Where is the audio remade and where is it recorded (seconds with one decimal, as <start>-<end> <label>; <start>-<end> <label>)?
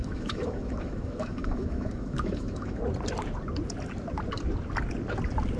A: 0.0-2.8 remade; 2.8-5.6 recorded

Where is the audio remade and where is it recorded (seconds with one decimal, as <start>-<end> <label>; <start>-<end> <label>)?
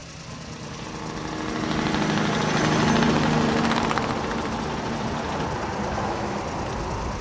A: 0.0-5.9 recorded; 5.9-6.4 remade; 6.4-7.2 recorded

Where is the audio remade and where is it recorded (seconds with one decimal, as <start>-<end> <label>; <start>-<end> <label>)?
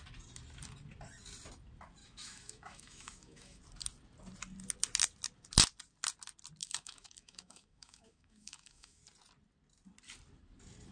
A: 0.0-2.0 recorded; 2.0-3.6 remade; 3.6-6.6 recorded; 6.6-9.0 remade; 9.0-10.9 recorded